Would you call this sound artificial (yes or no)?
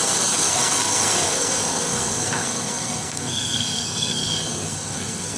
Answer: yes